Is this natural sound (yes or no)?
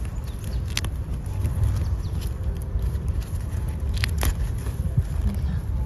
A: yes